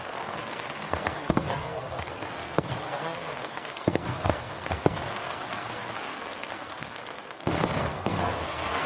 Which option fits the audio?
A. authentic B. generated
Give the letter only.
B